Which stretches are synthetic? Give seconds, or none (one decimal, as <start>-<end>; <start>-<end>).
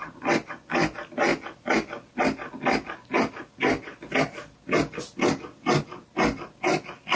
none